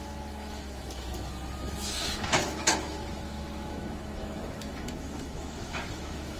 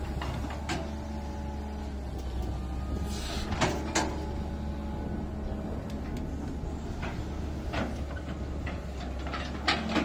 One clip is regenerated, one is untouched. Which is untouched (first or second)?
second